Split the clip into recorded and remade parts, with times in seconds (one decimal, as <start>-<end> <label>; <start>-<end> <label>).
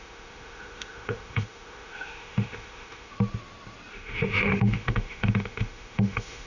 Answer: 0.0-3.1 remade; 3.1-3.9 recorded; 3.9-6.5 remade